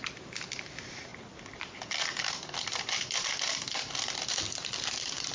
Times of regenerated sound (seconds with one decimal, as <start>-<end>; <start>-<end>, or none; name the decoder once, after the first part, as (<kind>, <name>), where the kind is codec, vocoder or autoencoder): 0.0-1.1 (vocoder, BigVGAN v2); 4.3-5.3